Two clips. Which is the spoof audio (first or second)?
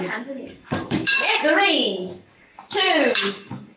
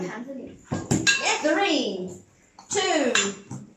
first